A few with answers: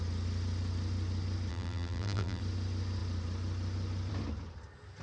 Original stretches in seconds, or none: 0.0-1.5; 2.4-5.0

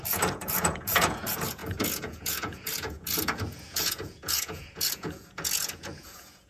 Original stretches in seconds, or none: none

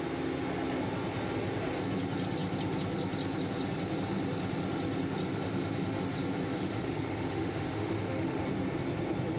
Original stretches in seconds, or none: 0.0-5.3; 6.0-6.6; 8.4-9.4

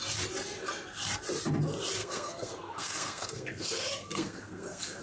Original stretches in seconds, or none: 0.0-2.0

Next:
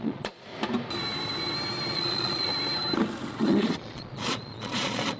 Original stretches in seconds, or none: 0.5-1.9; 2.5-3.3

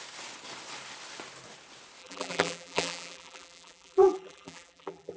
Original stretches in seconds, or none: 0.0-2.0

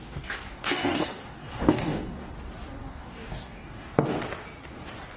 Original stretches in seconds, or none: 2.3-2.8; 4.1-5.2

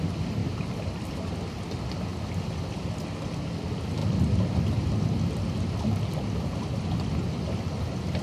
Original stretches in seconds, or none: 0.0-0.4; 1.3-4.0; 7.1-8.2